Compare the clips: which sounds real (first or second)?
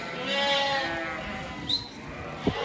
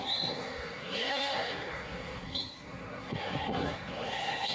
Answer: first